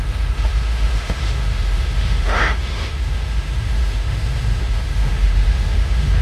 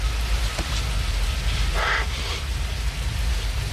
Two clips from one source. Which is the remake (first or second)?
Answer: first